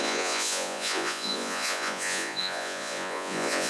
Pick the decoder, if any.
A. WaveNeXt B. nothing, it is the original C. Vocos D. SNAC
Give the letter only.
C